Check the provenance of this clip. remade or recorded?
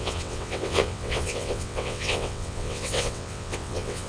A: remade